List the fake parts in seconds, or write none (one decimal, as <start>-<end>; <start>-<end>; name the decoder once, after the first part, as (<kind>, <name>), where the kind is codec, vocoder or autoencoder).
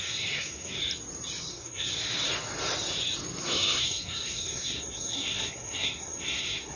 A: 0.0-0.8 (codec, SNAC); 1.5-1.9; 3.4-6.8